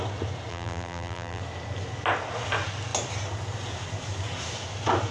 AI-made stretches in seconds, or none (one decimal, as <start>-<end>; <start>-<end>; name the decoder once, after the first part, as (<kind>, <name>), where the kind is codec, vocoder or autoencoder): 0.5-1.4 (vocoder, BigVGAN v2)